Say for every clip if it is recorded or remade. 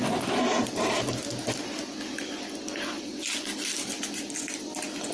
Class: recorded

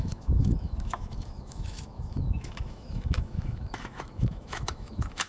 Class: remade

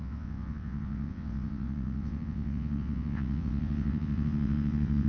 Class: remade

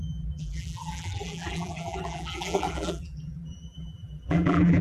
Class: remade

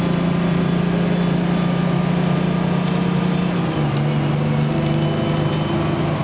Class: recorded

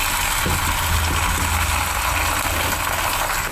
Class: recorded